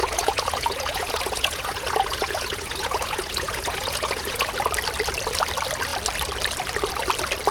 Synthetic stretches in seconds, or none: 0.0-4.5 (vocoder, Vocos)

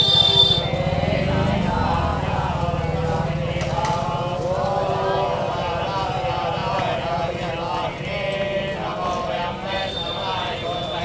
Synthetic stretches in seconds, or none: 2.1-2.6 (vocoder, Vocos); 6.6-7.3

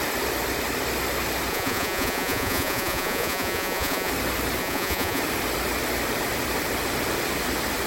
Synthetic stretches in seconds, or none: 1.5-4.1 (vocoder, Vocos); 4.6-5.2

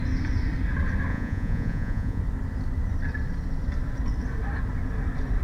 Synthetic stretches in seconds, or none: 1.1-2.2 (vocoder, Vocos)

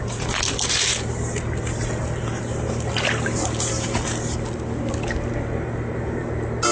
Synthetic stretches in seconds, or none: none

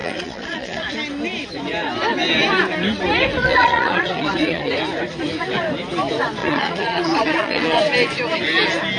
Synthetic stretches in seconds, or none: 0.0-0.8 (vocoder, Vocos); 3.4-4.7; 6.4-7.8